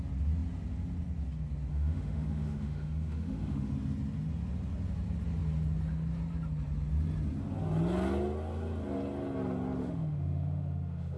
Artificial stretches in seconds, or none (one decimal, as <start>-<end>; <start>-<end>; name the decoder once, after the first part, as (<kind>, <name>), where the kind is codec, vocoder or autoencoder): 1.7-3.7 (autoencoder, DAC-VAE); 9.8-11.2